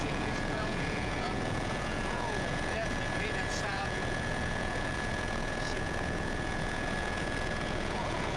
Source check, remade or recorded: remade